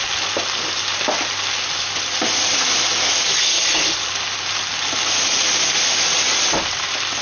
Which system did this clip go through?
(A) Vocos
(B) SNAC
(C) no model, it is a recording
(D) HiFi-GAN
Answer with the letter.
C